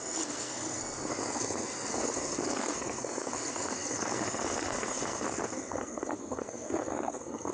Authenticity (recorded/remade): remade